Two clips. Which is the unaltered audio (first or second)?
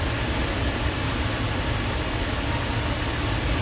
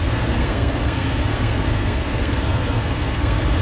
first